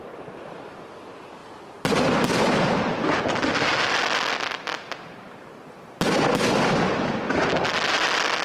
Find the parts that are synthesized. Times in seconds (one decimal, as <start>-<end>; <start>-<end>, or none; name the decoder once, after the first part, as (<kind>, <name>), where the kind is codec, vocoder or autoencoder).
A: none